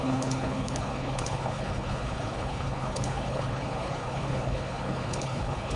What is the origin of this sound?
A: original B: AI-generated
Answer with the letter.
B